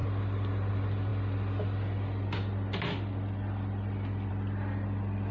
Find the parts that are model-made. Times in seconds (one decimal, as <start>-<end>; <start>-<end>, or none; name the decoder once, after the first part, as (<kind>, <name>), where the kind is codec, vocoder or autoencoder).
none